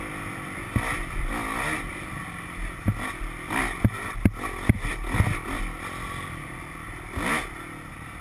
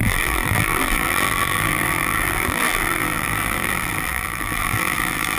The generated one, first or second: second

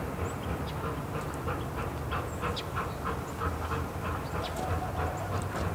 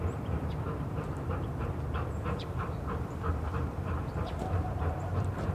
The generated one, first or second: second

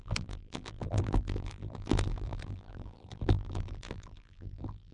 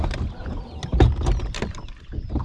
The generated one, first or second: first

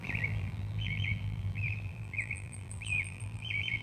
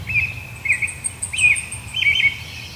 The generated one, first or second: first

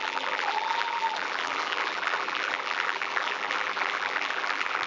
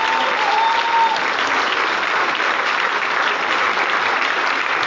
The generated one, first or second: first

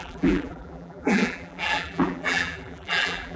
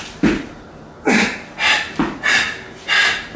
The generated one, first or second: first